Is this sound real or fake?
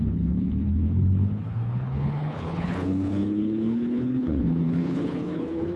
fake